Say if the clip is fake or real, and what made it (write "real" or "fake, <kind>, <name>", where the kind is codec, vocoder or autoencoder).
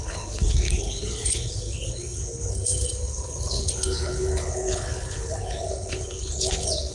fake, codec, HILCodec